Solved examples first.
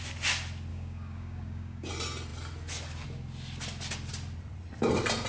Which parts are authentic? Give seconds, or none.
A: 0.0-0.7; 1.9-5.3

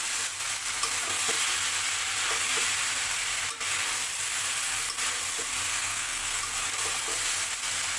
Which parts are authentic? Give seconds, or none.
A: 0.0-5.7; 6.4-8.0

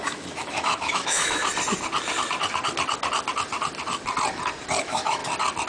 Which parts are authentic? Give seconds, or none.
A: 1.4-4.8; 5.2-5.7